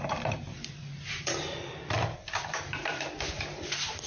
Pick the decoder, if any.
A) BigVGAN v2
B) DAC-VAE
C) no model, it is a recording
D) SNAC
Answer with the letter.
A